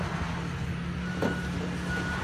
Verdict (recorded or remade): recorded